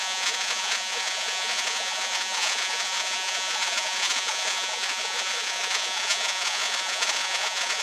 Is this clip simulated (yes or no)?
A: yes